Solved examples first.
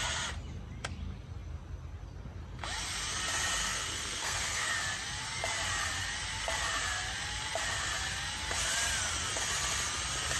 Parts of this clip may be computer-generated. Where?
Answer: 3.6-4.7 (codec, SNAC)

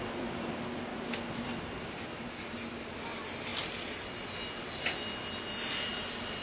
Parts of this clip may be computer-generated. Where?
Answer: none

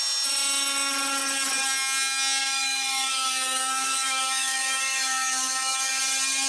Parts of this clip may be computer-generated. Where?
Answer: 2.4-6.0 (autoencoder, DAC-VAE)

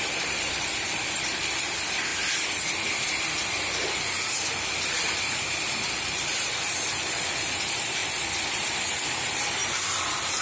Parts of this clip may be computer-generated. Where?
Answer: 0.0-2.1 (vocoder, BigVGAN v2); 5.6-8.0; 8.5-10.4

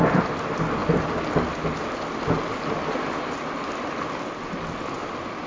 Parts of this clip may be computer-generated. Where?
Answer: none

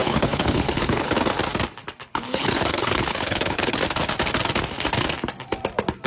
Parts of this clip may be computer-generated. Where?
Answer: 0.0-1.1 (codec, HILCodec); 2.1-3.8

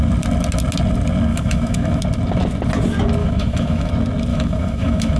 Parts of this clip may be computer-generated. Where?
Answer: 1.3-2.0 (autoencoder, DAC-VAE); 3.2-3.9; 4.3-5.2